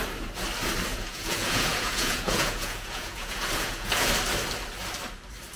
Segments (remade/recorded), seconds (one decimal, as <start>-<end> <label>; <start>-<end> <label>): 0.0-0.9 recorded; 0.9-4.1 remade; 4.1-5.6 recorded